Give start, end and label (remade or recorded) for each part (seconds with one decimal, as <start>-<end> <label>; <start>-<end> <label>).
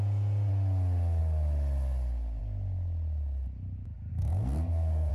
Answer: 0.0-4.1 recorded; 4.1-5.1 remade